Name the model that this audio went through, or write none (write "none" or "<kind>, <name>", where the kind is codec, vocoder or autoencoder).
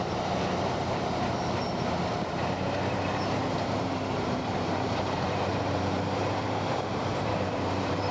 vocoder, BigVGAN v2